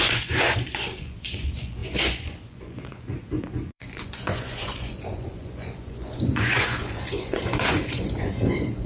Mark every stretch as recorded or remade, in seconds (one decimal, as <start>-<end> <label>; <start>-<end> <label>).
0.0-8.9 remade